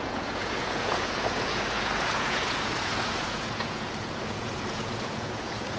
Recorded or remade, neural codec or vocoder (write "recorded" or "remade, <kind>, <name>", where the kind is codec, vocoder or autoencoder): remade, vocoder, Vocos